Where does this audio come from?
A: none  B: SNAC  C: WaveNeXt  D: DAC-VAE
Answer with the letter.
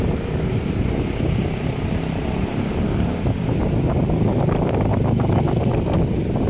A